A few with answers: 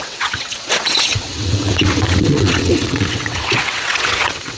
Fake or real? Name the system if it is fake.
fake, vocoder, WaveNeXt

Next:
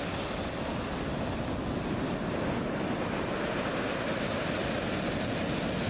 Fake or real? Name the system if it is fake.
real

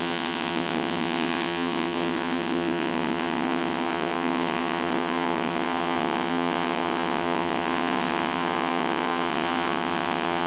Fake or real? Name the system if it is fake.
fake, vocoder, WaveNeXt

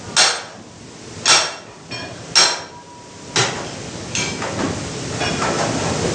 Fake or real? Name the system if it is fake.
real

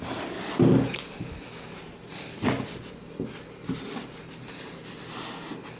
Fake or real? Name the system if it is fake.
real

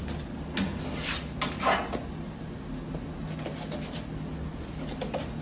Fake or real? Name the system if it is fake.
real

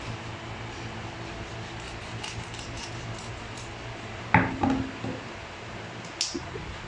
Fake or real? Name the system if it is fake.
real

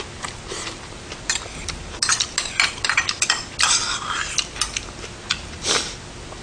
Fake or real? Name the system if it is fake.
real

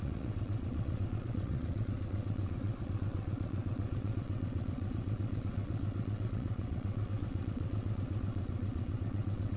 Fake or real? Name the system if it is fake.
fake, vocoder, WaveNeXt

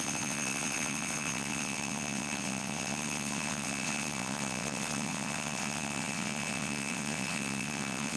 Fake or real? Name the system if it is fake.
fake, vocoder, WaveNeXt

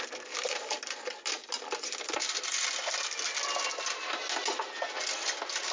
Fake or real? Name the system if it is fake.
real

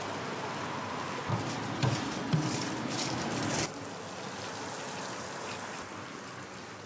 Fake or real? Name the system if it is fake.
real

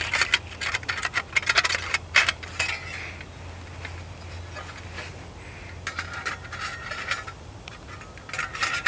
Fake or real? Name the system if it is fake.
real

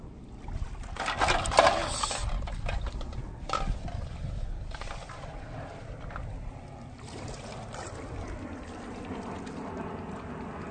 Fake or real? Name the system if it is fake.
real